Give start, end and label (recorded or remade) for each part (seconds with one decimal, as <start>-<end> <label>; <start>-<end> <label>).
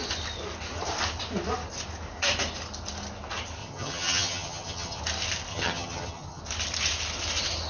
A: 0.0-3.6 recorded; 3.6-5.0 remade; 5.0-5.5 recorded; 5.5-6.4 remade; 6.4-7.7 recorded